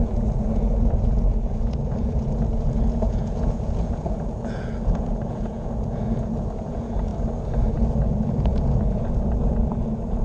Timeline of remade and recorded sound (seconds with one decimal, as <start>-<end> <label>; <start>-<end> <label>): 0.0-7.1 remade; 7.1-7.6 recorded; 7.6-10.2 remade